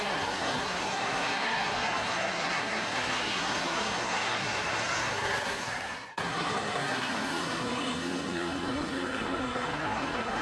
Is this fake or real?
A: fake